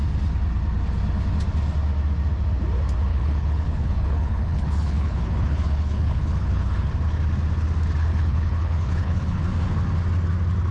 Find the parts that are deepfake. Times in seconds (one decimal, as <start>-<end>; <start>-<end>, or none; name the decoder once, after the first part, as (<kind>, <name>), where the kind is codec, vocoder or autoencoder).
3.1-6.9 (codec, HILCodec); 8.0-9.4